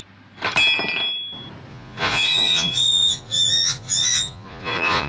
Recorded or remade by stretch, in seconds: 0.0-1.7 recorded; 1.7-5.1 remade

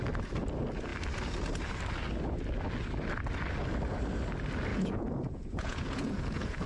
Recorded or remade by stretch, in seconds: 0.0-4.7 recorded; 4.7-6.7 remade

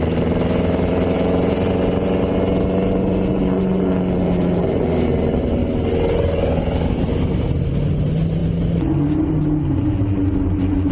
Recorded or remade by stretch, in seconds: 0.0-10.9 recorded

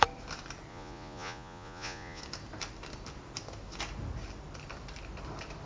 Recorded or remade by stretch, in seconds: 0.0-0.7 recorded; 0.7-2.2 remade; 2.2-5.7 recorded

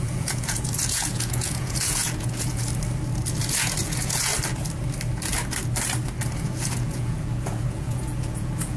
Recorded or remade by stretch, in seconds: 0.0-2.7 remade; 2.7-3.3 recorded; 3.3-4.3 remade; 4.3-6.4 recorded; 6.4-8.8 remade